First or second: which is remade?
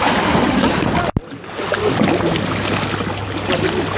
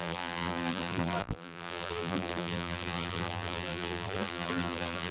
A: second